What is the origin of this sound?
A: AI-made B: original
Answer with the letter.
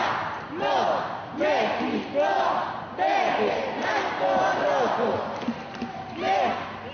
B